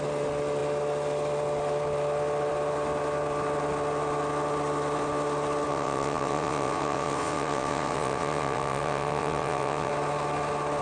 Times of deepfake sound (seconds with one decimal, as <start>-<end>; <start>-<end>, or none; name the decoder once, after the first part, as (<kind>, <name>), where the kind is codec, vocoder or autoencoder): 5.7-9.9 (vocoder, WaveNeXt)